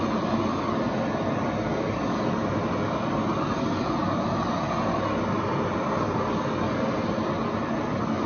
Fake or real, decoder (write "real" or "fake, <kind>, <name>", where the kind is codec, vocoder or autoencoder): real